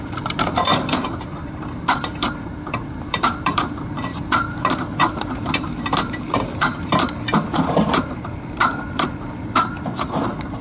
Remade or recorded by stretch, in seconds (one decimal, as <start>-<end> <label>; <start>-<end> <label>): 0.0-10.6 remade